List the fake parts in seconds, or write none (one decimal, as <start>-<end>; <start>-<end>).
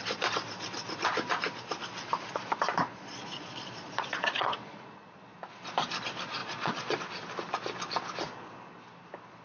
2.9-5.2; 6.4-7.0